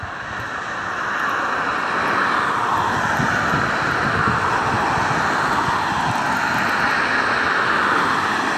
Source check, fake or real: real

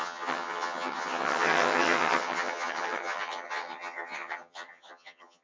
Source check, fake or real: fake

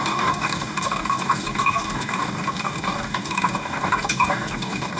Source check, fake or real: fake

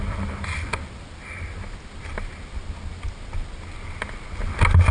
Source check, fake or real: real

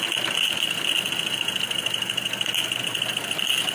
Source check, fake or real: real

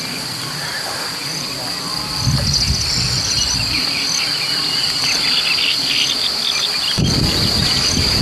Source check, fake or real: real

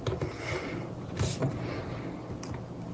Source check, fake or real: real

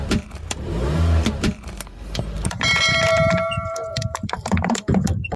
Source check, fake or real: fake